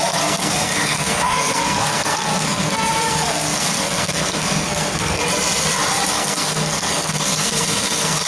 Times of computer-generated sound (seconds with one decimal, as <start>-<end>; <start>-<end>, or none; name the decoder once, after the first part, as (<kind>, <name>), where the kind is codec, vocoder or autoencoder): 0.0-5.2 (codec, SNAC); 6.1-8.3